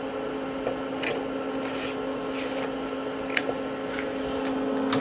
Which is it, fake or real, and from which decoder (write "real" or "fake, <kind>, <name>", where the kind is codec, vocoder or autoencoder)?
real